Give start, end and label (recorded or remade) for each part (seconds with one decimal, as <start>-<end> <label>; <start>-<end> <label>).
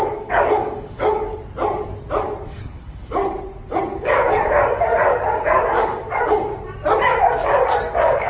0.0-1.3 remade; 1.3-2.5 recorded; 2.5-3.2 remade; 3.2-4.0 recorded; 4.0-6.5 remade; 6.5-7.2 recorded; 7.2-8.3 remade